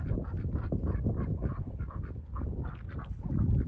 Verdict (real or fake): real